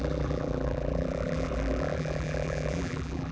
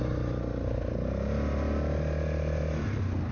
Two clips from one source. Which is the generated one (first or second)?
first